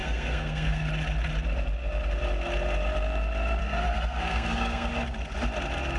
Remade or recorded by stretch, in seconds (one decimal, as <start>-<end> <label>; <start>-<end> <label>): 0.0-0.9 remade; 0.9-3.6 recorded; 3.6-4.9 remade; 4.9-6.0 recorded